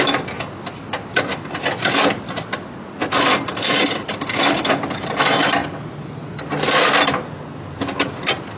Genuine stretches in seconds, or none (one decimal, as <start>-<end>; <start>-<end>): 0.0-8.6